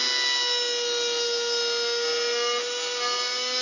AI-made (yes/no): no